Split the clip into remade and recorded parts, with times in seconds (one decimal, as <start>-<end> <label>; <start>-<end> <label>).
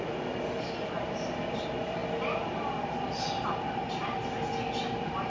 0.0-5.3 recorded